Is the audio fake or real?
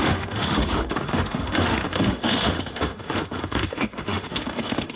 fake